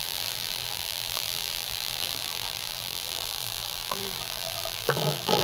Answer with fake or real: fake